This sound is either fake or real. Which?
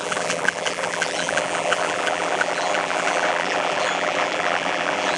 fake